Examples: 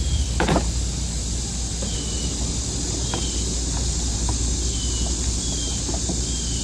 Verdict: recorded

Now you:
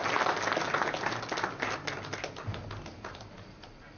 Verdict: recorded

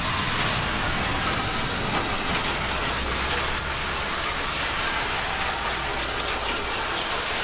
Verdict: recorded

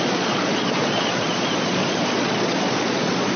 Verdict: remade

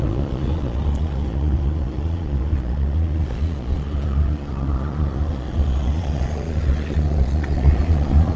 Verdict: remade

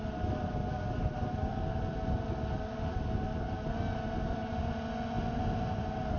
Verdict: recorded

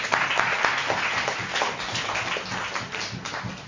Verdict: recorded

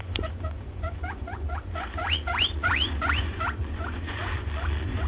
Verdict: remade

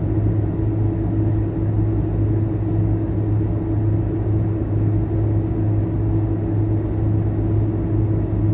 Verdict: recorded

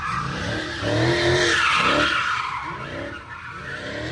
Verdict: recorded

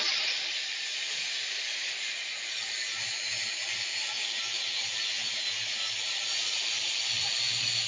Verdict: recorded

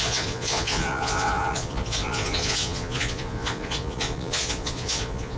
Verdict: remade